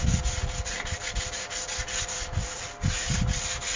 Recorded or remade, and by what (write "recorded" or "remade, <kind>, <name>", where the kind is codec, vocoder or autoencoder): recorded